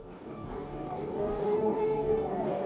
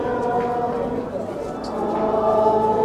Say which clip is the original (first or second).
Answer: second